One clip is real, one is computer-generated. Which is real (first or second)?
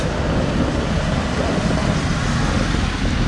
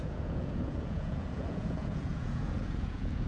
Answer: first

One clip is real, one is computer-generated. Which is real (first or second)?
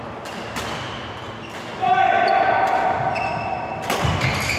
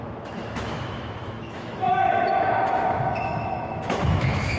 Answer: first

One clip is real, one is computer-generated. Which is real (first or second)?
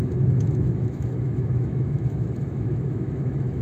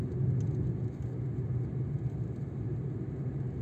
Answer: second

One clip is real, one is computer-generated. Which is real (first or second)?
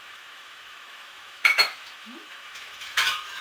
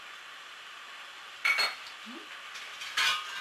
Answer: second